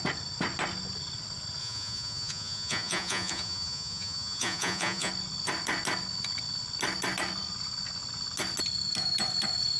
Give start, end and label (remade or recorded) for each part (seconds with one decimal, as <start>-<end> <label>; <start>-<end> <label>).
0.0-1.6 recorded; 1.6-5.1 remade; 5.1-9.8 recorded